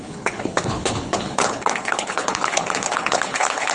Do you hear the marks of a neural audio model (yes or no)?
yes